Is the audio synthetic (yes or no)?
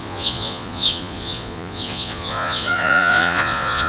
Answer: yes